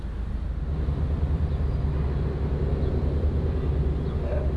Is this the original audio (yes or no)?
yes